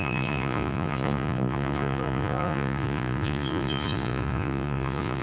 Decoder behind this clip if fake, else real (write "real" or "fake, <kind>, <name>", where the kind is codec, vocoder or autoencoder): fake, vocoder, Vocos